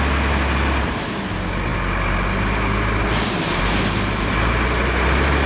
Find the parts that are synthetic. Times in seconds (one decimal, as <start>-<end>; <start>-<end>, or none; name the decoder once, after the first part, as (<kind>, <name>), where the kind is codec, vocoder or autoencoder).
none